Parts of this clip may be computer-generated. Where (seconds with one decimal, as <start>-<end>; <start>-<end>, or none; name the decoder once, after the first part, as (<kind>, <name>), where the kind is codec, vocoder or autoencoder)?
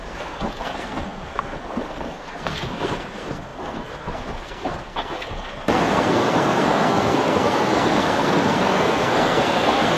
0.0-10.0 (codec, SNAC)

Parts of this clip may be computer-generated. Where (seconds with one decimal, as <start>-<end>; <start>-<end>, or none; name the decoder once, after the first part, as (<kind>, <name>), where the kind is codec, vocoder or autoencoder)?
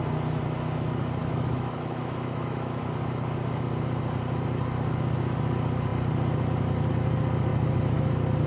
1.2-2.8 (autoencoder, DAC-VAE); 7.5-8.1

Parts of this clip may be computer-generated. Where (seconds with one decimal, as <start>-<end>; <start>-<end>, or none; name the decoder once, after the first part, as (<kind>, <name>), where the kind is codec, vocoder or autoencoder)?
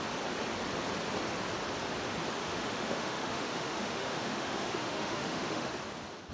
2.4-5.7 (autoencoder, DAC-VAE)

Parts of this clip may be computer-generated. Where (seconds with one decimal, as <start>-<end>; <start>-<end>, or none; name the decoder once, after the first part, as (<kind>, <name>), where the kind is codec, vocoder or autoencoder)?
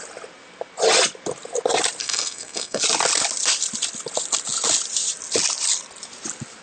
2.0-2.8 (codec, SNAC)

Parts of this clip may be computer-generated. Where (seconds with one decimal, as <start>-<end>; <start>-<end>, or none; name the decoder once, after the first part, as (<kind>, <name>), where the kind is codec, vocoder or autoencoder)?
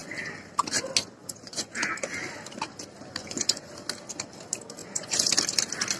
1.2-1.9 (vocoder, Vocos); 3.2-3.7; 4.8-5.3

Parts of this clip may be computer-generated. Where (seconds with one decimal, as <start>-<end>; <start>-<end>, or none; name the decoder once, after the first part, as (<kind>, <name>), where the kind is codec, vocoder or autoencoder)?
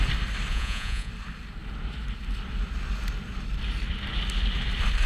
0.5-1.1 (vocoder, Vocos)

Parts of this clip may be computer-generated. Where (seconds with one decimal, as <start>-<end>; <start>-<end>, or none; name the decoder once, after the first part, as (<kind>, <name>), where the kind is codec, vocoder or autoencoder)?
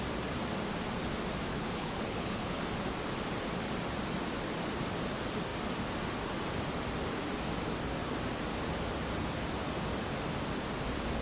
1.5-2.6 (codec, HILCodec)